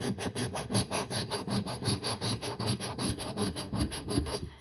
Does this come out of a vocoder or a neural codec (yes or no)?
yes